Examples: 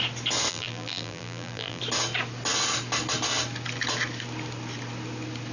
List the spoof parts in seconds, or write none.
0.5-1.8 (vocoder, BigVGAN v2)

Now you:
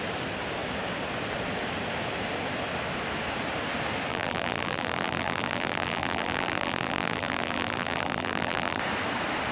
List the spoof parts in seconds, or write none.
4.1-8.8 (vocoder, BigVGAN v2)

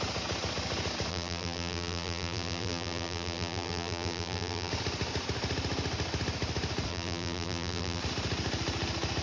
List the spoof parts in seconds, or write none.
1.1-4.7 (vocoder, BigVGAN v2); 6.9-8.0